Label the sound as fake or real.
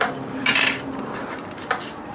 fake